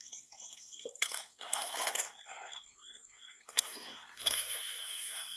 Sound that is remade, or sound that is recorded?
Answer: remade